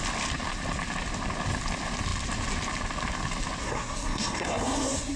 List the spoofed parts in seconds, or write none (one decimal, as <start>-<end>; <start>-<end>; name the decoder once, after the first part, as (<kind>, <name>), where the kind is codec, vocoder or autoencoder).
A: 3.6-5.2 (codec, SNAC)